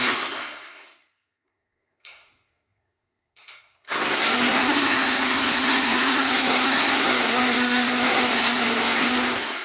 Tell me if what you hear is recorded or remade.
remade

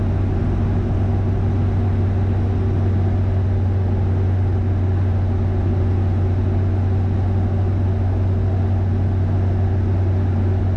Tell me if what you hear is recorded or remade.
recorded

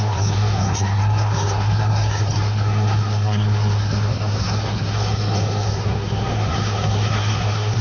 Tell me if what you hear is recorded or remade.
remade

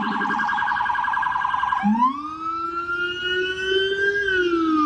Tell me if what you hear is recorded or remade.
recorded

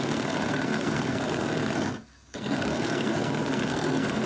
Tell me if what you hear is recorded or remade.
remade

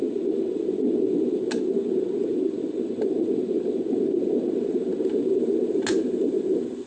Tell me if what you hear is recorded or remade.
recorded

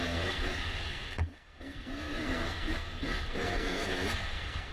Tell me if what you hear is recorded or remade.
remade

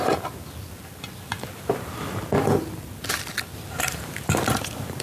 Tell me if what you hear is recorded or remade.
recorded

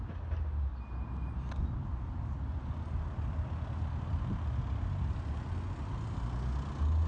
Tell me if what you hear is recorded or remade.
recorded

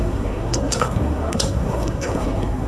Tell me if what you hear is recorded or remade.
remade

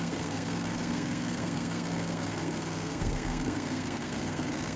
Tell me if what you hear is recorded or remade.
remade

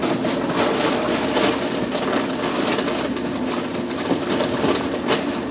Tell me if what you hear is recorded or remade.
recorded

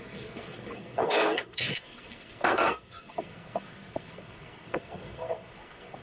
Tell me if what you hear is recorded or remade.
remade